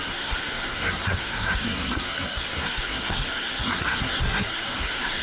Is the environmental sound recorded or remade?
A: remade